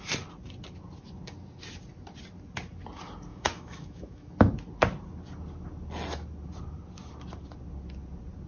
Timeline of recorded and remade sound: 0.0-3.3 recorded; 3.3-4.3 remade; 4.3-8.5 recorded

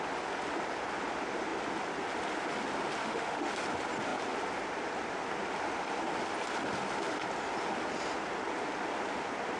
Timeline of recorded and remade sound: 0.0-3.0 recorded; 3.0-3.5 remade; 3.5-9.6 recorded

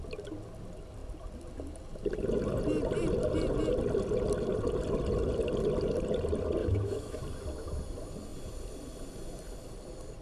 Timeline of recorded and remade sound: 0.0-6.6 recorded; 6.6-7.2 remade; 7.2-10.2 recorded

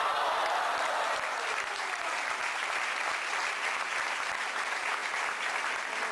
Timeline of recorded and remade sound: 0.0-6.1 recorded

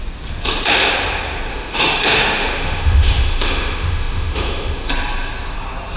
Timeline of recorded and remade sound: 0.0-1.5 recorded; 1.5-4.9 remade; 4.9-6.0 recorded

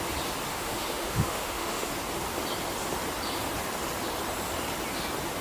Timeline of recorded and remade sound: 0.0-0.5 recorded; 0.5-1.9 remade; 1.9-5.4 recorded

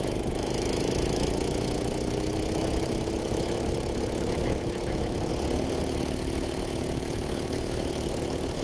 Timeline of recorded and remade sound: 0.0-5.3 remade; 5.3-5.8 recorded; 5.8-8.6 remade